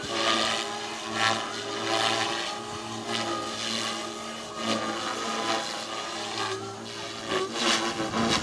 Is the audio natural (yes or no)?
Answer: yes